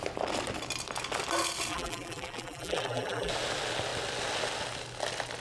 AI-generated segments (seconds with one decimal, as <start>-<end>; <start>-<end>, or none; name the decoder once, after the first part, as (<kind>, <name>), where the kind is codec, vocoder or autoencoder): 1.7-3.3 (vocoder, BigVGAN v2)